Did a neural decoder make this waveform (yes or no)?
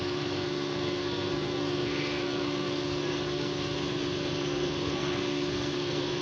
yes